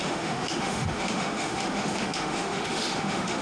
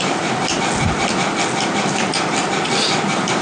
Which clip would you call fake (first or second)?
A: first